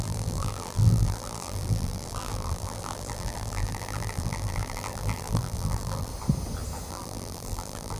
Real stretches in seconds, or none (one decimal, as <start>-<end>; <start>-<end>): 6.1-6.9

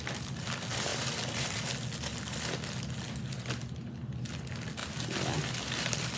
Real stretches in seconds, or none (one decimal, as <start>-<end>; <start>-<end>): 0.0-0.9; 1.6-4.8

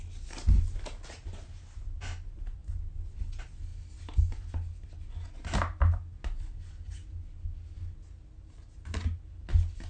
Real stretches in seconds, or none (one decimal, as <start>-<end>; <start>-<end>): 0.0-9.9

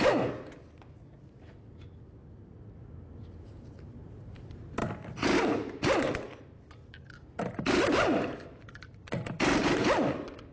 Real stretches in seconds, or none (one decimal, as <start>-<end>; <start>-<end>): 0.0-10.5

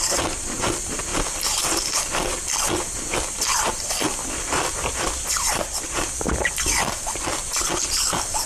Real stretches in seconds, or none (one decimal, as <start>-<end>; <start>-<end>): none

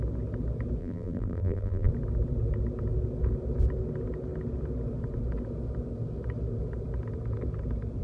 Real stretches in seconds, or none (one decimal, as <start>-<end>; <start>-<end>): 0.0-0.8; 1.9-8.0

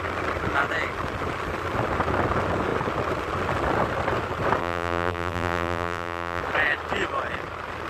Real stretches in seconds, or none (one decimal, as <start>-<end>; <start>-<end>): 0.0-4.6; 6.4-7.9